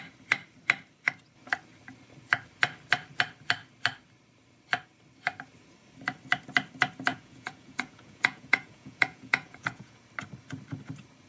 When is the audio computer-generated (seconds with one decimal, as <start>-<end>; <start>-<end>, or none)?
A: 7.1-10.0